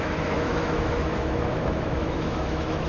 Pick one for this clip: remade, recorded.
remade